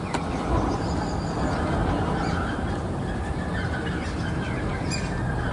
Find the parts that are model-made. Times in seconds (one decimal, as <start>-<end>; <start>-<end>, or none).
none